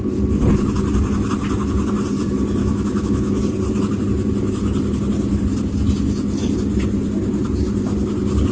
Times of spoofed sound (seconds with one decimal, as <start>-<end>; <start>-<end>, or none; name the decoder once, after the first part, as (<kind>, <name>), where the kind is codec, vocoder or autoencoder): 2.6-3.4 (autoencoder, DAC-VAE)